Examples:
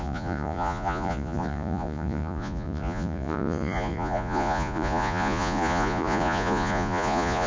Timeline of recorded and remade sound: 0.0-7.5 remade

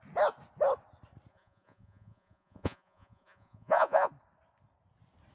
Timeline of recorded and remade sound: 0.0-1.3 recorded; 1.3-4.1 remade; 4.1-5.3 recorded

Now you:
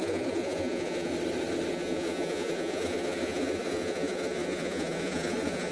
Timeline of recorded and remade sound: 0.0-1.1 remade; 1.1-1.7 recorded; 1.7-5.7 remade

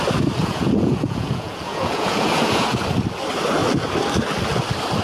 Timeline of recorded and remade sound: 0.0-0.4 recorded; 0.4-2.8 remade; 2.8-5.0 recorded